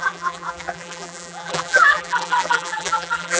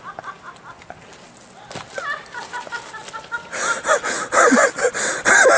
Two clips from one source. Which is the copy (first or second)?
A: first